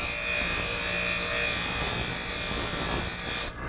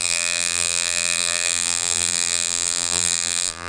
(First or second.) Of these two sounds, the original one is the first